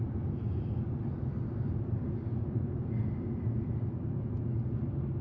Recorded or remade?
recorded